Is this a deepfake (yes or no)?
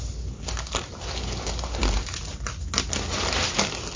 no